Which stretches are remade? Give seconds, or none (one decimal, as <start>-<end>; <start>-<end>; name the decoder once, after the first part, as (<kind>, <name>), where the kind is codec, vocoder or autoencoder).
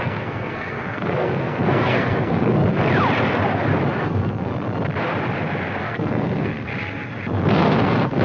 0.0-2.6 (codec, SNAC); 4.0-4.5; 5.8-6.7; 7.5-8.2